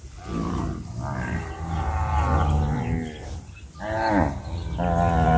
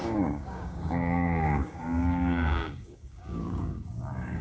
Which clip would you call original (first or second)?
first